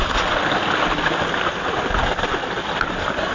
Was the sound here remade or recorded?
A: recorded